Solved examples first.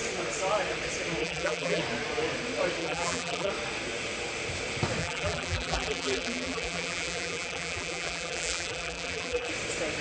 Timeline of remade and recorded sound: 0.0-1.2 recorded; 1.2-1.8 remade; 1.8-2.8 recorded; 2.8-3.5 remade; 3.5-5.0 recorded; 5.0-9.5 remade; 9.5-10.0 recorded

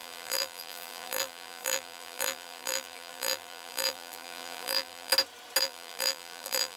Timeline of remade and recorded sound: 0.0-5.1 remade; 5.1-5.6 recorded; 5.6-6.8 remade

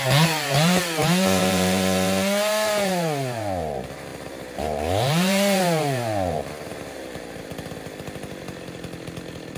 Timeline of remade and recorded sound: 0.0-7.5 remade; 7.5-9.6 recorded

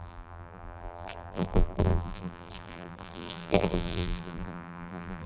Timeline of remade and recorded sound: 0.0-5.3 remade

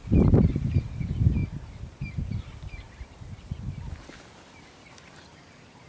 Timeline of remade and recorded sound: 0.0-1.4 remade; 1.4-4.9 recorded; 4.9-5.9 remade

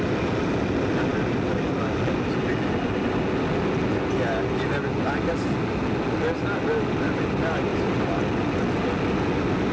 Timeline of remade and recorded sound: 0.0-9.7 recorded

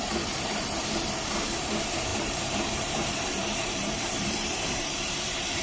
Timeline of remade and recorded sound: 0.0-0.8 remade; 0.8-2.1 recorded; 2.1-5.6 remade